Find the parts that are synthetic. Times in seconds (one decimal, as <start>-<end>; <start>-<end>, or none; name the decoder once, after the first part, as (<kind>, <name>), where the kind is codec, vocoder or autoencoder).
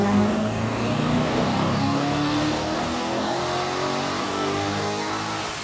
0.0-3.4 (codec, DAC); 4.2-5.1